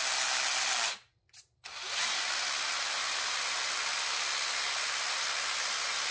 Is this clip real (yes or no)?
yes